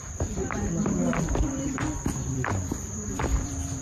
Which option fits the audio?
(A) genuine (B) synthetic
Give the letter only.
B